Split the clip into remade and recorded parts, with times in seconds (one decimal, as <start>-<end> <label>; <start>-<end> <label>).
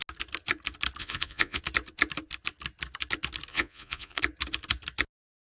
0.0-1.0 recorded; 1.0-1.6 remade; 1.6-3.5 recorded; 3.5-4.2 remade; 4.2-5.6 recorded